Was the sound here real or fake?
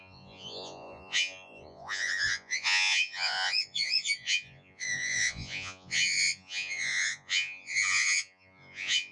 fake